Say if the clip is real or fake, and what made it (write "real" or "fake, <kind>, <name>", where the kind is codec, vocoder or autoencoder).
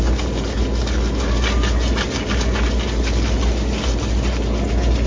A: real